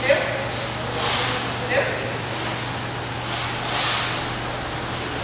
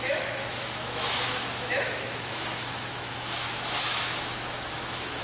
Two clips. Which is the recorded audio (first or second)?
first